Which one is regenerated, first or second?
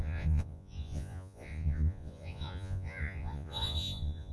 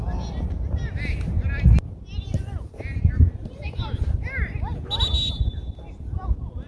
first